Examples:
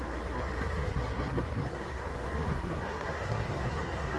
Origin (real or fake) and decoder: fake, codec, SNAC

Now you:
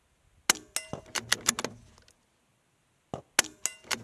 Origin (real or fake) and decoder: real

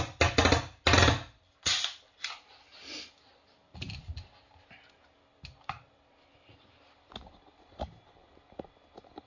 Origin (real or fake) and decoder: real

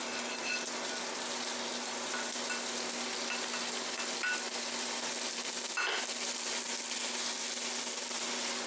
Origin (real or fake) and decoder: real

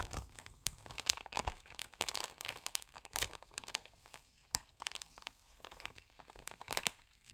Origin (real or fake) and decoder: fake, codec, SNAC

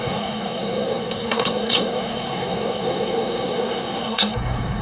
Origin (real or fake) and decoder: fake, codec, SNAC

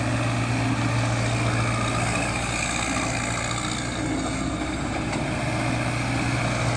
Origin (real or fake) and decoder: real